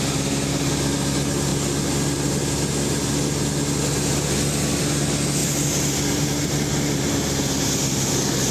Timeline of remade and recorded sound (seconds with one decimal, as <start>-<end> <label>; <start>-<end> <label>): 0.0-5.4 recorded; 5.4-8.1 remade; 8.1-8.5 recorded

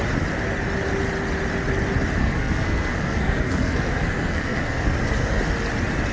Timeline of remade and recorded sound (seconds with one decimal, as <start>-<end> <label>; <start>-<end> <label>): 0.0-2.2 recorded; 2.2-5.4 remade; 5.4-6.1 recorded

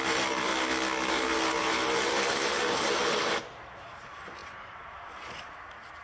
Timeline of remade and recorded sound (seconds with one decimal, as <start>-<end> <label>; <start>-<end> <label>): 0.0-0.5 remade; 0.5-1.1 recorded; 1.1-6.0 remade

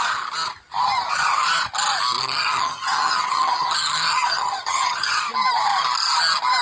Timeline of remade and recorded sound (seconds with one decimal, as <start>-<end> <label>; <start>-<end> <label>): 0.0-2.2 recorded; 2.2-5.2 remade; 5.2-6.6 recorded

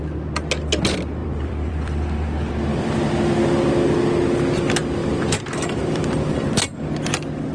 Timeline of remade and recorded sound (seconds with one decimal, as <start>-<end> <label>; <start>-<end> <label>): 0.0-1.2 recorded; 1.2-3.7 remade; 3.7-5.0 recorded; 5.0-6.6 remade; 6.6-7.5 recorded

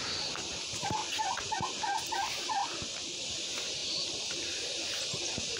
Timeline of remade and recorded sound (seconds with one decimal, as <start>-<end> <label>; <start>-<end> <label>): 0.0-2.6 remade; 2.6-3.2 recorded; 3.2-5.6 remade